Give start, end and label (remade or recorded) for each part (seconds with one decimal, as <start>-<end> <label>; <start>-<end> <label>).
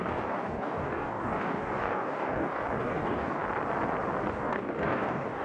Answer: 0.0-3.4 remade; 3.4-4.3 recorded; 4.3-5.4 remade